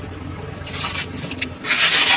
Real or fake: real